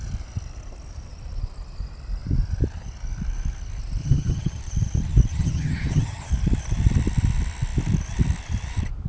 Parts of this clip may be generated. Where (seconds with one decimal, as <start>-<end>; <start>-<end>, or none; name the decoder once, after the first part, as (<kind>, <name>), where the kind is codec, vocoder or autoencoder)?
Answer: 4.0-4.6 (vocoder, HiFi-GAN); 5.3-6.3